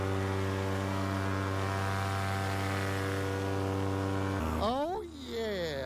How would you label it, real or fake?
real